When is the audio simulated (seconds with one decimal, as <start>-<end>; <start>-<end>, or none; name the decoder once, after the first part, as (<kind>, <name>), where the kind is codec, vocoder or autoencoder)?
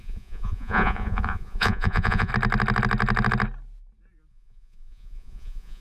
0.0-2.3 (vocoder, Vocos); 4.3-5.8